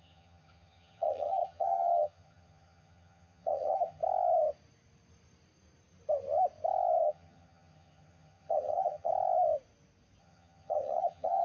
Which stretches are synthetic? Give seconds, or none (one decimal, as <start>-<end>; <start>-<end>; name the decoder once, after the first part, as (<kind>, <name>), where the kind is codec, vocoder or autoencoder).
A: 0.0-4.0 (vocoder, HiFi-GAN); 7.0-9.1; 10.2-11.4